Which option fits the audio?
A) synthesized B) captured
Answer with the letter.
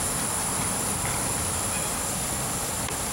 B